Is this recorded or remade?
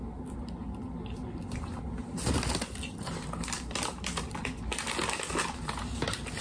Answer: recorded